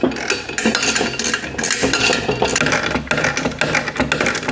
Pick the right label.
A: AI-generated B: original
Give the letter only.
B